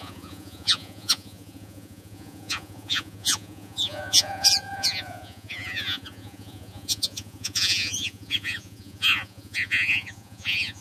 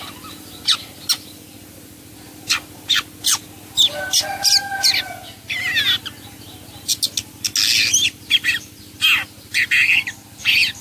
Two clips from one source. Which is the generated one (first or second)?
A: first